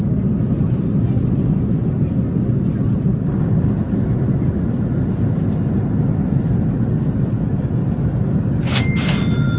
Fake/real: real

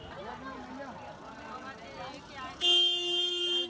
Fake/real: real